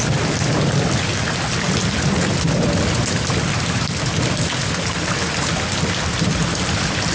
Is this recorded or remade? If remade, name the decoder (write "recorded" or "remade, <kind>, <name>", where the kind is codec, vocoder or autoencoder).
recorded